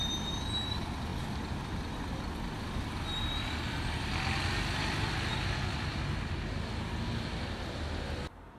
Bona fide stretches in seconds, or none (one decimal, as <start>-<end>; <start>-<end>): 0.0-8.6

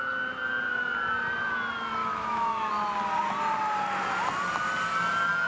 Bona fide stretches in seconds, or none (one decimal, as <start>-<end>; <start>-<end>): 0.0-2.0; 2.7-5.5

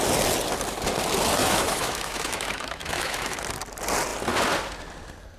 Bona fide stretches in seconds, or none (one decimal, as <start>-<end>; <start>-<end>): 0.0-1.4; 3.4-5.4

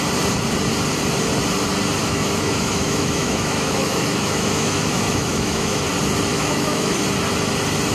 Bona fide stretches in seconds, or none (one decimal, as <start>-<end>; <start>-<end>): 0.0-2.0; 5.8-6.3; 7.0-7.9

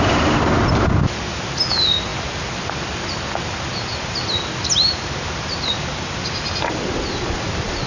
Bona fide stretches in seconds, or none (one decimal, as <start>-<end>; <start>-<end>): 0.0-7.9